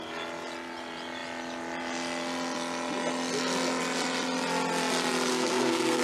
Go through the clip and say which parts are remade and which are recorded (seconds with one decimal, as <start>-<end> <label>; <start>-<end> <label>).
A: 0.0-5.3 recorded; 5.3-6.0 remade